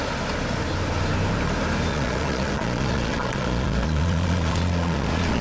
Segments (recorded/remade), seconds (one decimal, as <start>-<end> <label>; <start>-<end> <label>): 0.0-1.9 recorded; 1.9-5.4 remade